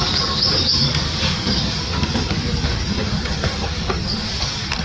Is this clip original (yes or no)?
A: no